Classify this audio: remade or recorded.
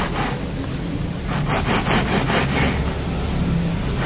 recorded